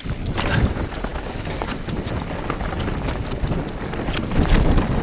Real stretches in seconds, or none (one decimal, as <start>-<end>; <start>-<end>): 0.0-5.0